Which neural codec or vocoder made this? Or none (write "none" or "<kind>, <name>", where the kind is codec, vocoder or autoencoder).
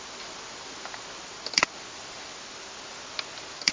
none